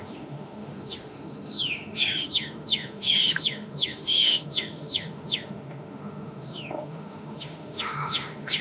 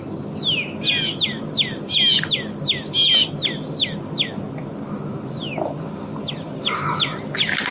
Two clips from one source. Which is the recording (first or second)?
second